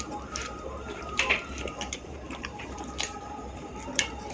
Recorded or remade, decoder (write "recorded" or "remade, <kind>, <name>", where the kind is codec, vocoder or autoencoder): remade, vocoder, BigVGAN v2